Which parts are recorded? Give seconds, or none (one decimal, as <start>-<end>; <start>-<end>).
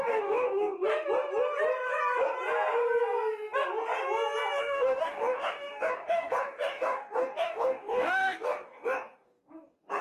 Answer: 0.9-4.6